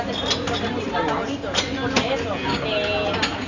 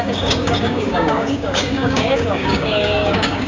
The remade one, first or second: second